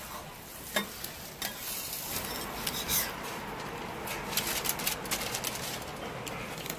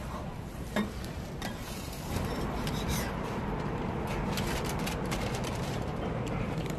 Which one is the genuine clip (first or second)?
first